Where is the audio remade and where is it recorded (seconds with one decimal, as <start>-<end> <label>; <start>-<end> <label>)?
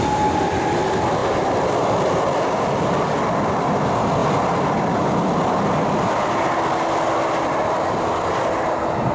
0.0-9.1 recorded